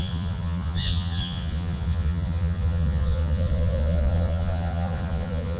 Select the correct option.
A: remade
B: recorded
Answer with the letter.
A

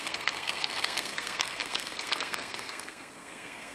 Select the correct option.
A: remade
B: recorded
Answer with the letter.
A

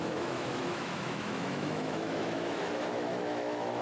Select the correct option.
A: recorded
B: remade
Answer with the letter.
B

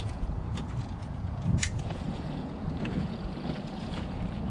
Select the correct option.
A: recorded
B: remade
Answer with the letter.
B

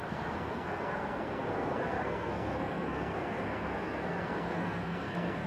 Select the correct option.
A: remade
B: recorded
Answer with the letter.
A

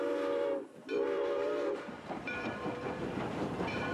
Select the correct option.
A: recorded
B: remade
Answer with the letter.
B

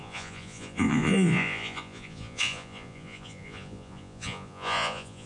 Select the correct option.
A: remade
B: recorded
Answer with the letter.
A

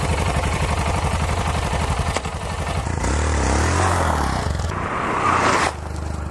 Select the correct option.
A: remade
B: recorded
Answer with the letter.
A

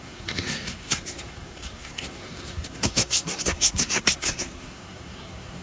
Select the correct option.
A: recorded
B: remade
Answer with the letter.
B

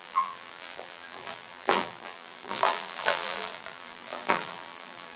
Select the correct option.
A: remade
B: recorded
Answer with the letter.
A